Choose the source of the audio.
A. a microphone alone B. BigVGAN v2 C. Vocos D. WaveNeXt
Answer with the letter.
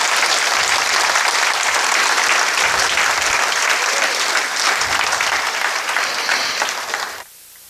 B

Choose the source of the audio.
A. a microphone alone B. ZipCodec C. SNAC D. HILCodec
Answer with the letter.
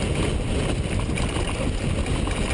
A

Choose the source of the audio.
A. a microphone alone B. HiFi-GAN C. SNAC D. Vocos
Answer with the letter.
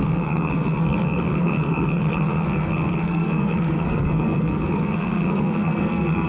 C